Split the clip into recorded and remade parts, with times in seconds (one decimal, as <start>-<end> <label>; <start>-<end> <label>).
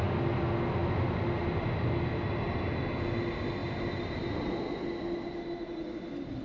0.0-6.4 recorded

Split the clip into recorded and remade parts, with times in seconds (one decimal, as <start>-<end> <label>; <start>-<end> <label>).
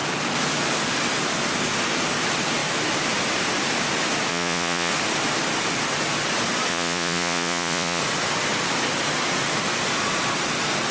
0.0-4.3 recorded; 4.3-4.9 remade; 4.9-6.7 recorded; 6.7-8.0 remade; 8.0-10.9 recorded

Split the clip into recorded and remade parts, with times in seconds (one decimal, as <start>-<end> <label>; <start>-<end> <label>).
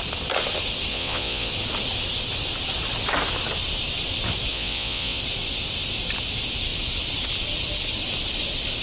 0.0-0.9 recorded; 0.9-1.5 remade; 1.5-4.5 recorded; 4.5-5.2 remade; 5.2-8.8 recorded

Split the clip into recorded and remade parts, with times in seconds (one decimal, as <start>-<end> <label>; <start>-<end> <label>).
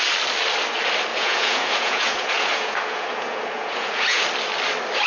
0.0-1.1 recorded; 1.1-4.2 remade; 4.2-5.1 recorded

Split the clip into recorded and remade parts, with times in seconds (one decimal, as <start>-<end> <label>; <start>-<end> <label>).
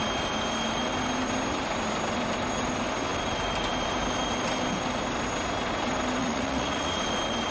0.0-6.2 recorded; 6.2-7.0 remade; 7.0-7.5 recorded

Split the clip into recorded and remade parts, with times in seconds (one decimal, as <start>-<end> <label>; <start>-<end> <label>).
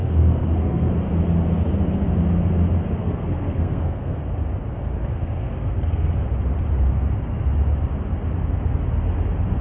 0.0-0.9 remade; 0.9-3.0 recorded; 3.0-4.2 remade; 4.2-5.1 recorded; 5.1-6.1 remade; 6.1-9.6 recorded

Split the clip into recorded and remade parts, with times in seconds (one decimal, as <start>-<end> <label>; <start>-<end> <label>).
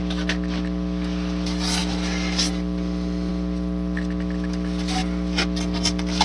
0.0-6.2 recorded